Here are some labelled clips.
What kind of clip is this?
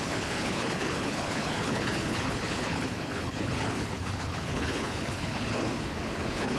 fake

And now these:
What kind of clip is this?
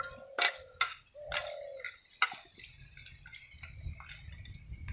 real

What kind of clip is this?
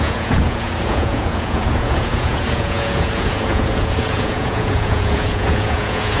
fake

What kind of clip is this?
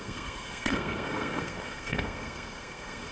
fake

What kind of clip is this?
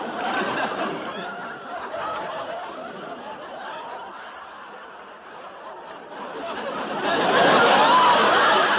fake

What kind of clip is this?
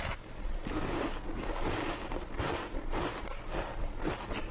real